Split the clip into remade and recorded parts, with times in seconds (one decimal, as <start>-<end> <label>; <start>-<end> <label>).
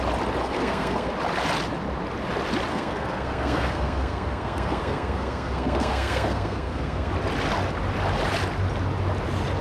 0.0-0.4 recorded; 0.4-1.1 remade; 1.1-2.7 recorded; 2.7-7.1 remade; 7.1-9.6 recorded